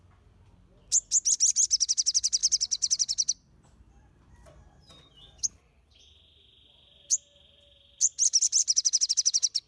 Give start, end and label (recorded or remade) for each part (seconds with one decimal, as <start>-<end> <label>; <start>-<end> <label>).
0.0-9.7 recorded